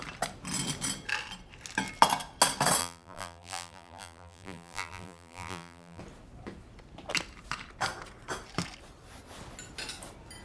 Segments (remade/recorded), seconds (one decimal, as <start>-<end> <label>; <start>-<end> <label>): 0.0-2.8 recorded; 2.8-6.0 remade; 6.0-10.4 recorded